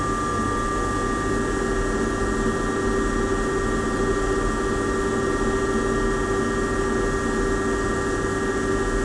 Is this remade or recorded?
recorded